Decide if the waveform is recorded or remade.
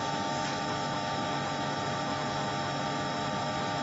recorded